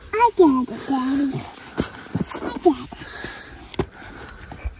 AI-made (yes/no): no